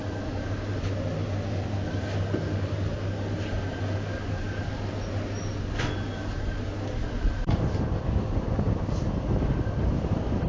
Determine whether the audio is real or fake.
real